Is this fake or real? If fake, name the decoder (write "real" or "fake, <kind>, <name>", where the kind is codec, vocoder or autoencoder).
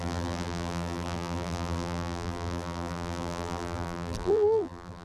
fake, vocoder, BigVGAN v2